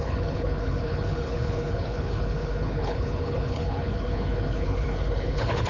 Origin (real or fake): fake